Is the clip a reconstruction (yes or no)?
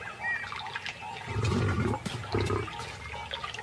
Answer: no